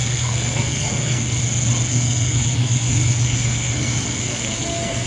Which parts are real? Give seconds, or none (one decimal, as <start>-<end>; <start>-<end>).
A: 1.4-1.9